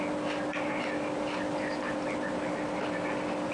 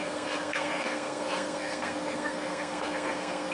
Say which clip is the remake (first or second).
second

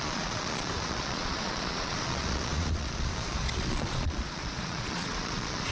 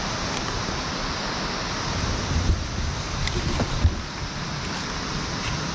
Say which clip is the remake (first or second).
first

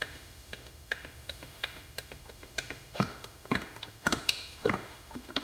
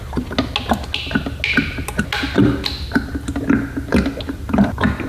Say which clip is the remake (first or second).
first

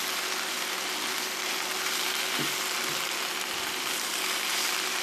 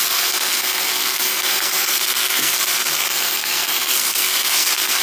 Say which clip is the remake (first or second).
second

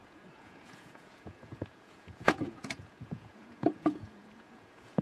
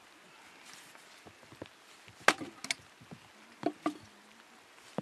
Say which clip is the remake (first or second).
first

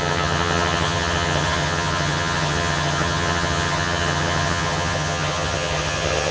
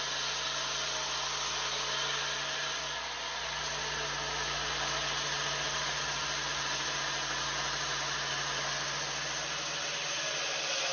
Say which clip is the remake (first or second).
first